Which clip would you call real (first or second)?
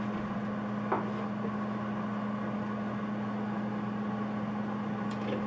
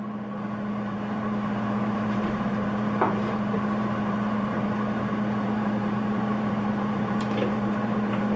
first